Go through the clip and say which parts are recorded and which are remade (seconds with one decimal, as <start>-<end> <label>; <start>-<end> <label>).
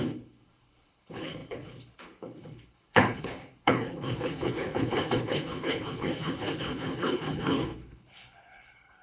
0.0-9.0 remade